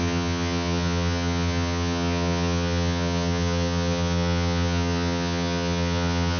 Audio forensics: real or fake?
fake